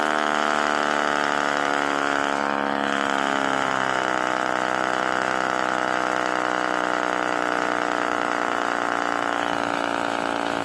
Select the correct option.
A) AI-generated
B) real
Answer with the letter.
A